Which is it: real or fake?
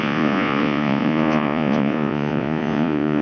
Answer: fake